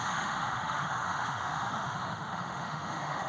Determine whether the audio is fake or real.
fake